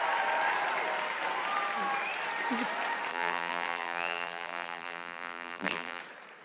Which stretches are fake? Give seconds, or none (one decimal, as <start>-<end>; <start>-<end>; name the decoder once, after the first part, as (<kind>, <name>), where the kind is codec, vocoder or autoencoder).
3.1-6.0 (vocoder, BigVGAN v2)